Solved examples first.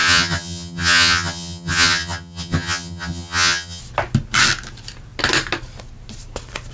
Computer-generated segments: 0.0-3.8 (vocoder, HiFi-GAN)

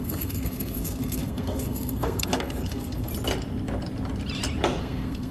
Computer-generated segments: 0.0-3.1 (codec, SNAC); 4.8-5.3

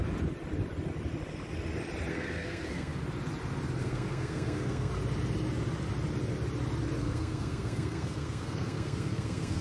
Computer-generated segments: 2.1-3.0 (codec, SNAC); 3.8-4.9; 7.0-9.6

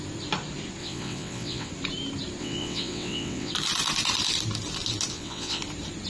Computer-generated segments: 0.8-1.7 (vocoder, WaveNeXt); 2.4-3.5; 5.1-5.6

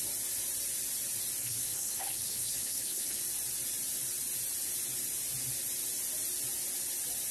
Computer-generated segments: 1.4-3.2 (codec, HILCodec)

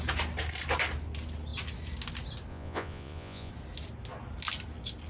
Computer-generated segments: 2.5-3.5 (vocoder, Vocos)